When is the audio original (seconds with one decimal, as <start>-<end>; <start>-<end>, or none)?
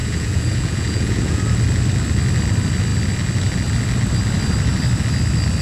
1.4-5.6